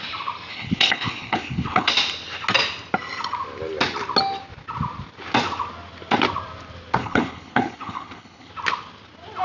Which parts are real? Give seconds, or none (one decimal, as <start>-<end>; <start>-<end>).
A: 0.0-0.5; 1.9-7.0; 8.5-9.4